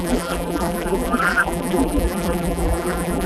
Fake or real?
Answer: fake